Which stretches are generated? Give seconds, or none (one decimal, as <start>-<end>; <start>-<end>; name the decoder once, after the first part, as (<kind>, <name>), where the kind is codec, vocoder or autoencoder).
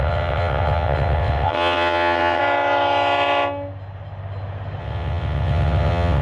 0.0-2.4 (vocoder, WaveNeXt); 4.8-6.2